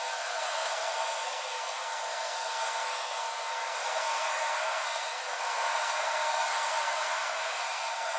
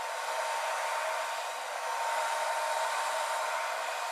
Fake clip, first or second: first